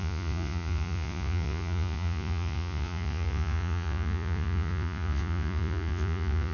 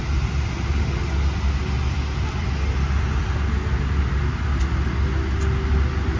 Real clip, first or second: second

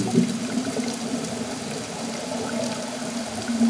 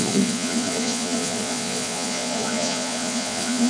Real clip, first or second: first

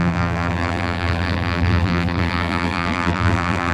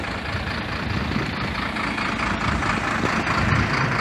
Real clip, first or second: second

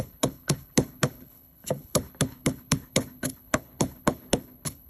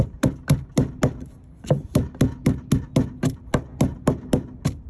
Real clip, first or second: second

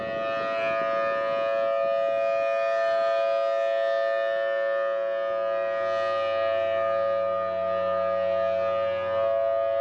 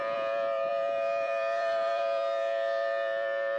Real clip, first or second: first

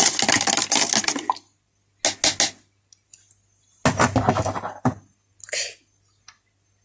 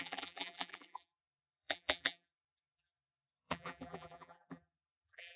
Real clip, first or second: first